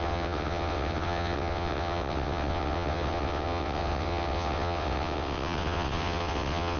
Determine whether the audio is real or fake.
fake